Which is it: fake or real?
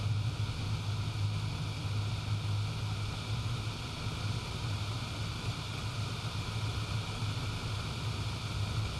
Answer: real